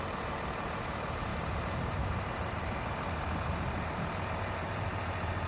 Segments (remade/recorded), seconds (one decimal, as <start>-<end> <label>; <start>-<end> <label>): 0.0-1.3 recorded; 1.3-3.8 remade; 3.8-5.5 recorded